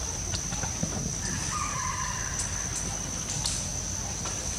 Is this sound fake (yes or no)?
no